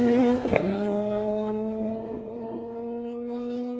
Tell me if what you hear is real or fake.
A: fake